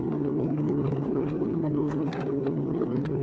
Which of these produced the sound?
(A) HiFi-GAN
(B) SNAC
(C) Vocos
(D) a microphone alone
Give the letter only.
B